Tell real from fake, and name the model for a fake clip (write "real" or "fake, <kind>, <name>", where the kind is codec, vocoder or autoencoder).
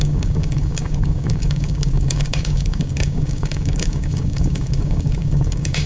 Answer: fake, codec, DAC